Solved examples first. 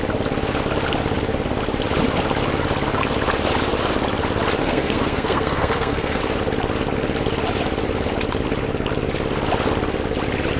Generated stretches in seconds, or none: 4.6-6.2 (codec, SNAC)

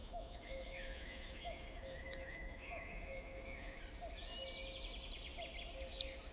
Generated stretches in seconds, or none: 0.0-3.8 (autoencoder, DAC-VAE)

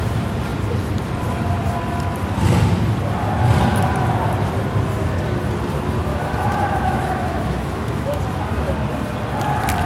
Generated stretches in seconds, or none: 6.1-8.2 (autoencoder, DAC-VAE)

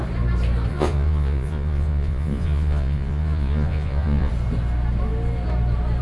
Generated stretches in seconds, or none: 0.7-4.3 (vocoder, Vocos)

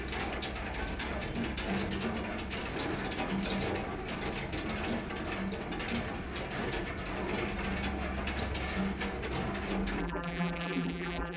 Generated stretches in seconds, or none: 10.0-11.4 (vocoder, BigVGAN v2)

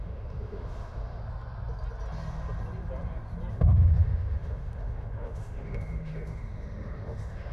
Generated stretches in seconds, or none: 0.0-1.2 (autoencoder, DAC-VAE); 3.5-7.5

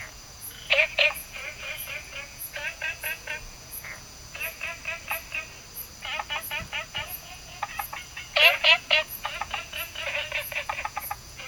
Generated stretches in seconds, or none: 0.0-4.7 (vocoder, Vocos); 6.9-11.5

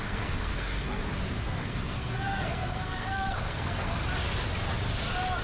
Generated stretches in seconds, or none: 0.0-1.0 (codec, SNAC); 1.6-4.0